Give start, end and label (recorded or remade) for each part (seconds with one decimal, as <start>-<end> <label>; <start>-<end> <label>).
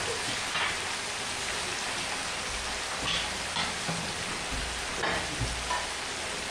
0.0-6.5 recorded